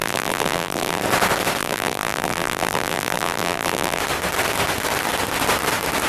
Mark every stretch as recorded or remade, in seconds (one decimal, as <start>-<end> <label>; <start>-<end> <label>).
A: 0.0-1.0 remade; 1.0-1.6 recorded; 1.6-4.0 remade; 4.0-6.1 recorded